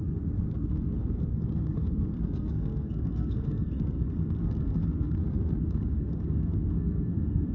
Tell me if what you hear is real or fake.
fake